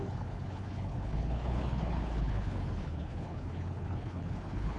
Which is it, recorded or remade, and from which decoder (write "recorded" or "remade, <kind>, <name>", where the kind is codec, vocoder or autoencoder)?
remade, codec, HILCodec